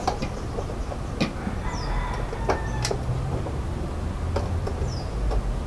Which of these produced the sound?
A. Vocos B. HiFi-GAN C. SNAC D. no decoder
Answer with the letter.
D